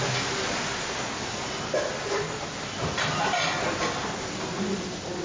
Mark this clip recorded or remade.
recorded